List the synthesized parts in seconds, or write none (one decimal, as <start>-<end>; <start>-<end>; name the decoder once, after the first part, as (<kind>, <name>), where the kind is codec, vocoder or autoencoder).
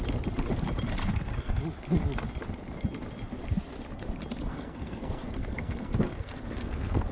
1.0-1.6 (codec, SNAC); 4.5-7.1